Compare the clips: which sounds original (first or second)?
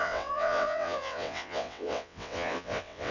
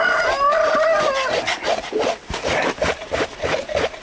second